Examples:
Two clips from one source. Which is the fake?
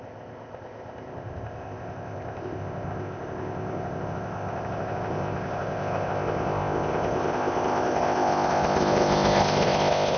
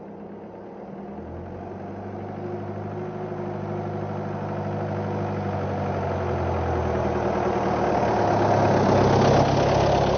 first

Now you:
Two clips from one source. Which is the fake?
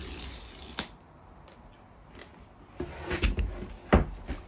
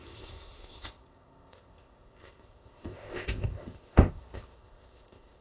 second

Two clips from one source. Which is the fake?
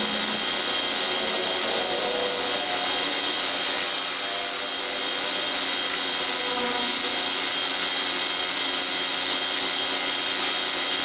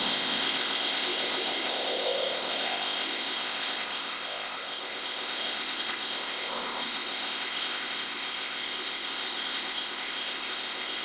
second